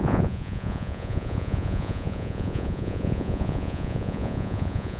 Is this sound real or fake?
fake